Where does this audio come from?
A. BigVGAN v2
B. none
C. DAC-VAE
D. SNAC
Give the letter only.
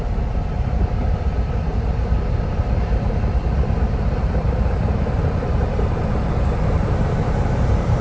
A